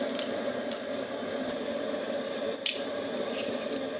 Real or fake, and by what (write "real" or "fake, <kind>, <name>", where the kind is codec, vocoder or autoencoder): fake, vocoder, BigVGAN v2